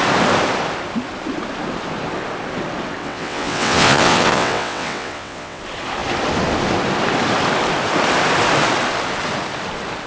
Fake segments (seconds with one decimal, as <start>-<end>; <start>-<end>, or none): 3.0-5.6